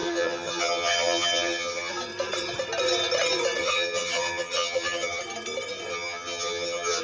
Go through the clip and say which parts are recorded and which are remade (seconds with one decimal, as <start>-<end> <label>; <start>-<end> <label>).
0.0-1.9 remade; 1.9-3.6 recorded; 3.6-5.2 remade; 5.2-5.9 recorded; 5.9-7.0 remade